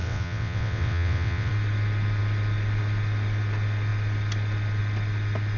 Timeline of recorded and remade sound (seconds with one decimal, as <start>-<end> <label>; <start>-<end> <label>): 0.0-1.5 remade; 1.5-5.6 recorded